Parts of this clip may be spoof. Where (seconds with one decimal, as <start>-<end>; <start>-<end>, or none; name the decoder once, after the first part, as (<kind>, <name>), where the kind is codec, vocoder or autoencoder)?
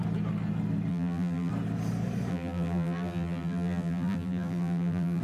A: 0.9-1.5 (vocoder, BigVGAN v2); 2.3-5.2